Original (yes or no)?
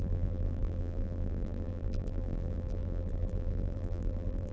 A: no